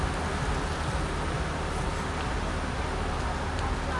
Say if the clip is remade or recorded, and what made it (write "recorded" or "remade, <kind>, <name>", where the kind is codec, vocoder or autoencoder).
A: recorded